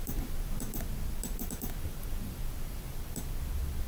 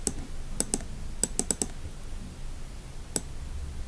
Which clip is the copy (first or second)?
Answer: first